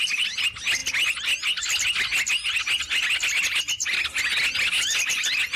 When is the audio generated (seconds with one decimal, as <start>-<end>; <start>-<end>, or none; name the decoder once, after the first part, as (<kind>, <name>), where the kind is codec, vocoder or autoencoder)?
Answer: none